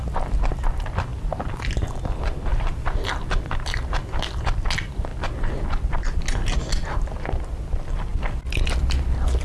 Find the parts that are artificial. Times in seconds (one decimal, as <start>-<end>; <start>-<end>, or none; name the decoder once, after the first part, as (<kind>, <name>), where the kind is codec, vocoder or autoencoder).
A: 2.5-3.0 (vocoder, BigVGAN v2)